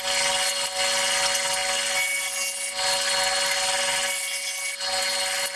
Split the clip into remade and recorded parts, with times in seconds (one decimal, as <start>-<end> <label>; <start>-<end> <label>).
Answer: 0.0-5.6 recorded